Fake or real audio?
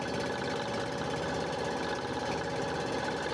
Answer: real